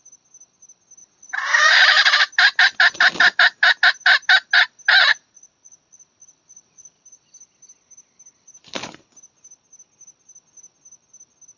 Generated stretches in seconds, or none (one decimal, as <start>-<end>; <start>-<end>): 1.0-1.7; 5.0-7.0